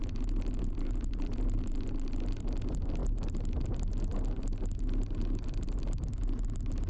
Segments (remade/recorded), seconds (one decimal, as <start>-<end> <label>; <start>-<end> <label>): 0.0-6.9 recorded